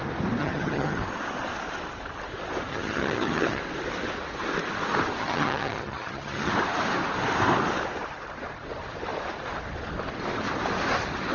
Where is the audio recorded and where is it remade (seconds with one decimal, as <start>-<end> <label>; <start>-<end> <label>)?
0.0-0.4 recorded; 0.4-1.0 remade; 1.0-2.7 recorded; 2.7-3.6 remade; 3.6-5.2 recorded; 5.2-6.5 remade; 6.5-11.3 recorded